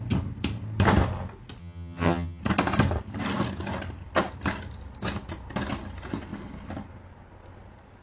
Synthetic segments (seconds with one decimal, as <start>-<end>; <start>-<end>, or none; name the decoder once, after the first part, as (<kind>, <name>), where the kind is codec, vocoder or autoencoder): 1.6-2.4 (vocoder, HiFi-GAN)